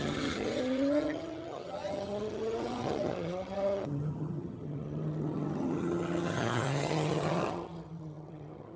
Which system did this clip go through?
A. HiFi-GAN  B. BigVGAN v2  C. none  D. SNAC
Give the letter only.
A